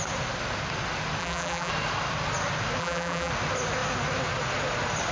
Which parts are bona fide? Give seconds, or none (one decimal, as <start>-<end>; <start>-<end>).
0.0-1.2; 1.7-2.8; 3.3-5.1